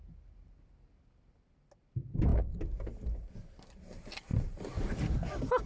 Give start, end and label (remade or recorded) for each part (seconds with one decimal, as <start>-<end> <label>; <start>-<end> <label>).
0.0-5.7 recorded